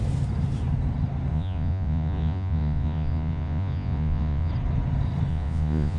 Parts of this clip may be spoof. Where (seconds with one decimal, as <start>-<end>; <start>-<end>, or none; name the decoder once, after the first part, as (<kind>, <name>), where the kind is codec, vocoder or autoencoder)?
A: 1.3-4.5 (vocoder, Vocos); 5.3-6.0